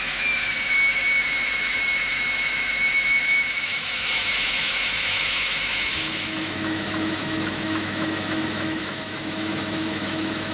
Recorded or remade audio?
remade